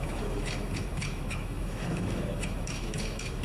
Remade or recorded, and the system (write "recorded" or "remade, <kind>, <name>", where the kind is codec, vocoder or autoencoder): remade, autoencoder, DAC-VAE